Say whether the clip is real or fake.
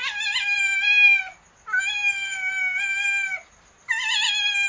real